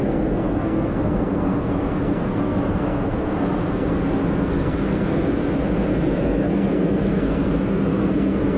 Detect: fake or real fake